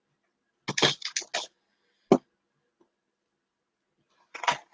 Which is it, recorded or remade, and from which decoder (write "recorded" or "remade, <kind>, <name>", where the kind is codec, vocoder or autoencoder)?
recorded